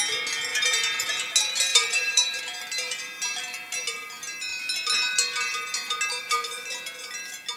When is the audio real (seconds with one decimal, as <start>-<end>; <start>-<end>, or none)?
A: 0.0-0.5; 1.1-1.7; 2.4-7.6